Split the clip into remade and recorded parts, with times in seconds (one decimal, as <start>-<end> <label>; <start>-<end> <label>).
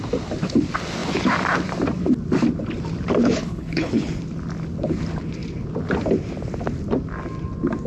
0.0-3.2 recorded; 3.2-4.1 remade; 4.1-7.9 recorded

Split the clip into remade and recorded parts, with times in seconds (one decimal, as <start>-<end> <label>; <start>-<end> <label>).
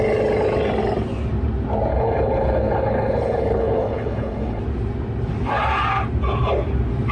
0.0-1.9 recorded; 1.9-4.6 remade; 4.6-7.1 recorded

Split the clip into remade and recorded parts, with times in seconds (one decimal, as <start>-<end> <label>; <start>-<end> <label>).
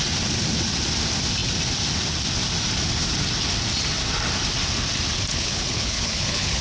0.0-5.3 recorded; 5.3-6.6 remade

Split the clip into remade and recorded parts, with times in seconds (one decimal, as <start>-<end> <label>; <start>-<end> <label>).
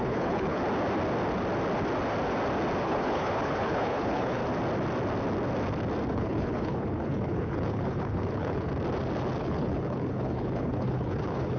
0.0-0.6 remade; 0.6-2.8 recorded; 2.8-4.4 remade; 4.4-6.1 recorded; 6.1-8.7 remade; 8.7-9.4 recorded; 9.4-11.6 remade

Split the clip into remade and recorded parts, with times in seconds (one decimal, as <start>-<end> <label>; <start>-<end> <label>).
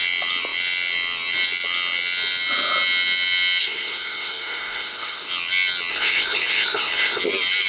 0.0-3.6 recorded; 3.6-5.3 remade; 5.3-5.9 recorded; 5.9-7.2 remade; 7.2-7.7 recorded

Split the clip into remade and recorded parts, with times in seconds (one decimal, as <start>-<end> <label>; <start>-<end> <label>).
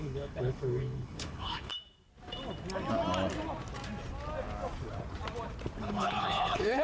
0.0-1.7 remade; 1.7-5.8 recorded; 5.8-6.8 remade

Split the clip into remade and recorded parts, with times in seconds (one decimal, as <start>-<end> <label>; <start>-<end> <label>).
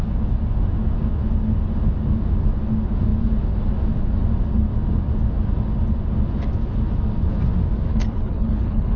0.0-7.9 recorded; 7.9-9.0 remade